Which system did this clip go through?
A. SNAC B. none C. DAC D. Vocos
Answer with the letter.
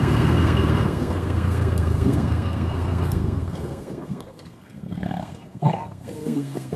A